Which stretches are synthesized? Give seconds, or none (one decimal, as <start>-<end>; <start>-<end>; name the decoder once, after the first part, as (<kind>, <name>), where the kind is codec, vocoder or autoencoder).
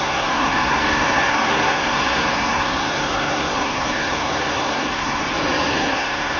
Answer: 0.0-5.2 (codec, SNAC); 5.7-6.4